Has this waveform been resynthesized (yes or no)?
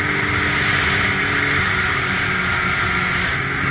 no